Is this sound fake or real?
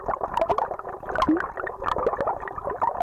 real